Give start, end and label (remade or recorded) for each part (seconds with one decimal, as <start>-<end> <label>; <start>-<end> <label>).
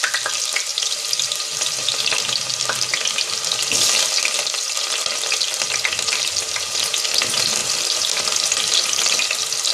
0.0-7.6 recorded; 7.6-8.2 remade; 8.2-9.7 recorded